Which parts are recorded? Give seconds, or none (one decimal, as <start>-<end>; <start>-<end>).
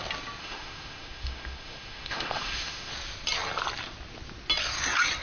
0.0-0.4; 2.9-5.2